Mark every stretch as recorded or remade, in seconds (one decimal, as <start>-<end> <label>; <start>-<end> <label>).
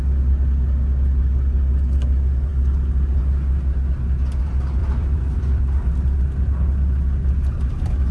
0.0-4.8 recorded; 4.8-5.6 remade; 5.6-8.1 recorded